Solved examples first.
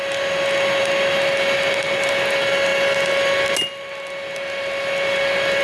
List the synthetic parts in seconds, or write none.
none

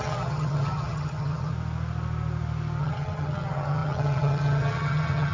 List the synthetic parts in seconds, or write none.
0.0-1.5 (vocoder, HiFi-GAN); 2.8-5.3

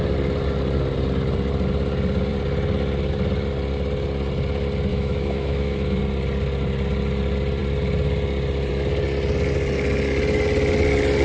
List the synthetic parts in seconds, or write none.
4.9-6.0 (autoencoder, DAC-VAE)

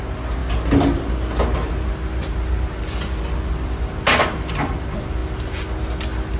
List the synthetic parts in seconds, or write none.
none

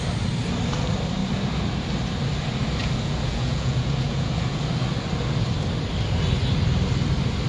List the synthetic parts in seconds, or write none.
2.8-4.6 (vocoder, Vocos)

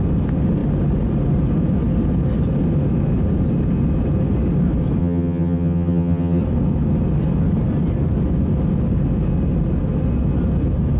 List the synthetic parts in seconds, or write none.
5.0-6.4 (vocoder, HiFi-GAN)